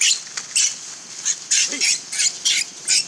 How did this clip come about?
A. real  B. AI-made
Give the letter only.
A